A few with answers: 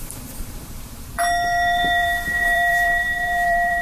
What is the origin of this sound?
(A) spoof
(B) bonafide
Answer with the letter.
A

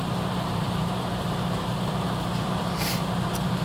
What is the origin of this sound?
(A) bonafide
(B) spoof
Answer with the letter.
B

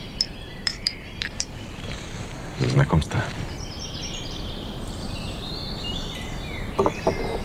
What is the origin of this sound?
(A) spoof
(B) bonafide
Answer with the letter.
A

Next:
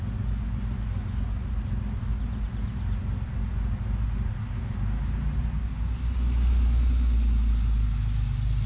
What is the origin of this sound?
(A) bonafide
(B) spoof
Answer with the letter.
A